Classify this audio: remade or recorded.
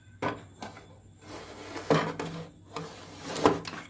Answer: recorded